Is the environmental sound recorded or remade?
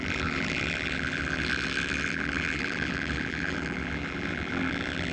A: remade